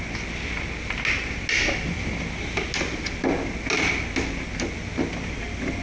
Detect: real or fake real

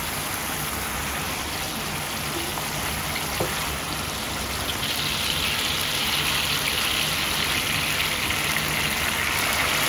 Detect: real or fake real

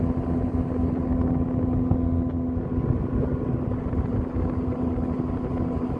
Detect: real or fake real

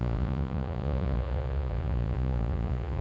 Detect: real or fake fake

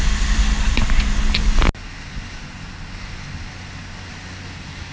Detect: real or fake real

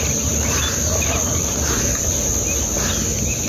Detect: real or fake real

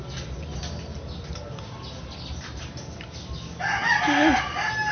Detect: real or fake real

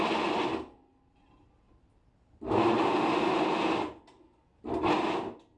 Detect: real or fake real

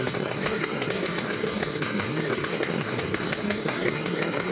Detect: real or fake fake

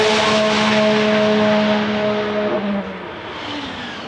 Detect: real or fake real